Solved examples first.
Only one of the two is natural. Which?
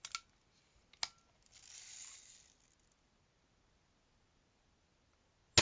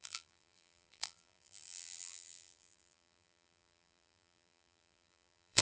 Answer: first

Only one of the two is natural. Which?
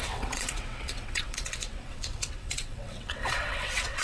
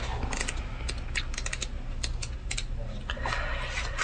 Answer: second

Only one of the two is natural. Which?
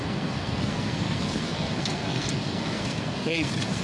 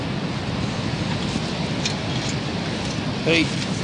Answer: second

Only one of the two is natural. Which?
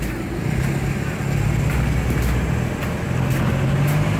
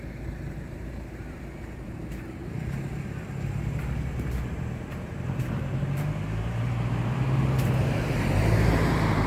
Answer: first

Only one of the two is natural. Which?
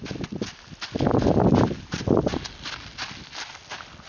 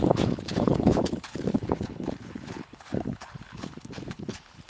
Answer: first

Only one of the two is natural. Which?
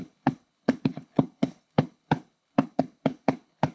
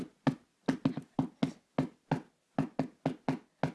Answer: second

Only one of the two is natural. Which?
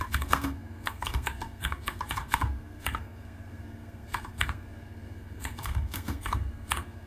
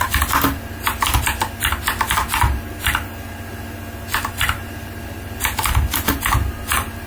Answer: second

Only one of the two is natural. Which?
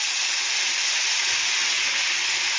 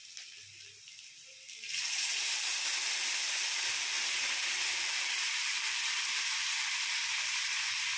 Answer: first